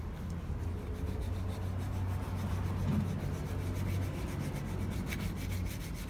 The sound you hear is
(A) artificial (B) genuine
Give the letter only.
B